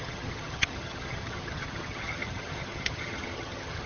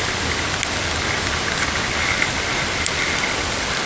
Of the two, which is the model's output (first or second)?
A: first